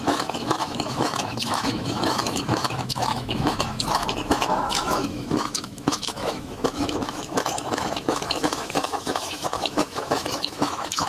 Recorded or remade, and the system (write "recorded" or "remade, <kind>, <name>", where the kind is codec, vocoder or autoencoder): remade, autoencoder, DAC-VAE